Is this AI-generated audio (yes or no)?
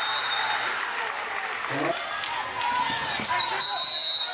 no